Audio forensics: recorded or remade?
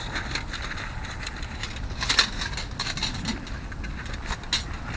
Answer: recorded